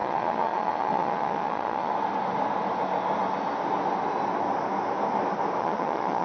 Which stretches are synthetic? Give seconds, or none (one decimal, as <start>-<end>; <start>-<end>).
0.0-1.9; 5.6-6.2